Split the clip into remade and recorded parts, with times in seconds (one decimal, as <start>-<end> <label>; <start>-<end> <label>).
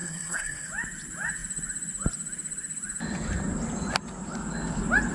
0.0-0.7 remade; 0.7-5.1 recorded